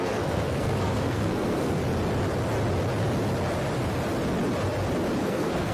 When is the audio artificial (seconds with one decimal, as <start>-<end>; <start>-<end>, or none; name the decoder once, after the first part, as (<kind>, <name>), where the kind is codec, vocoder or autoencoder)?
0.0-1.8 (codec, SNAC); 5.2-5.7